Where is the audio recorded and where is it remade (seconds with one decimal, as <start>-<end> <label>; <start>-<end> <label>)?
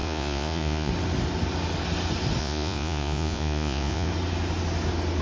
0.0-0.9 remade; 0.9-2.4 recorded; 2.4-4.1 remade; 4.1-5.2 recorded